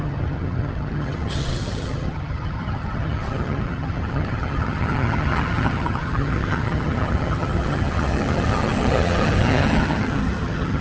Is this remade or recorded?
remade